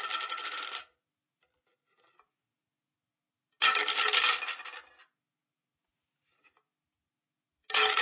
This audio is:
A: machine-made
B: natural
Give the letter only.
B